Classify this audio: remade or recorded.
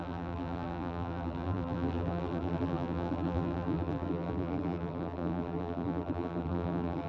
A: remade